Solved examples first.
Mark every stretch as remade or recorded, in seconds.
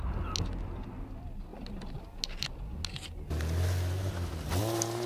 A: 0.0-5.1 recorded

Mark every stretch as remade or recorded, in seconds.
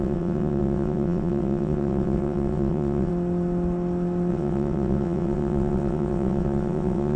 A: 0.0-3.1 remade; 3.1-4.3 recorded; 4.3-7.2 remade